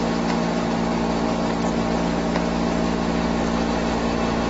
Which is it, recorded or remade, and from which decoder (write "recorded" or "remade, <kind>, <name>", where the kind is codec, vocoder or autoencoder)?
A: recorded